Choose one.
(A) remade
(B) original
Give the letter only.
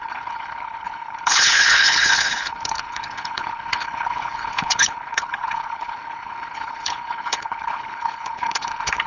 A